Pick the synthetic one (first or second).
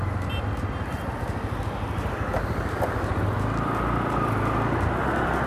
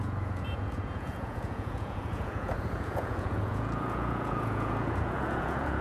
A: second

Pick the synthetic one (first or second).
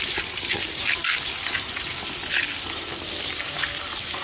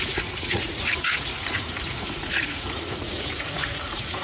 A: second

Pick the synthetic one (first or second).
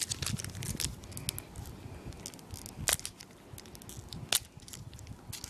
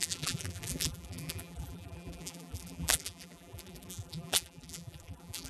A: second